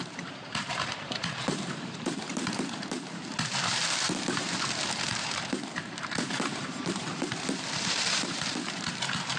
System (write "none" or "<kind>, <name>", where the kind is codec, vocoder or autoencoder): vocoder, BigVGAN v2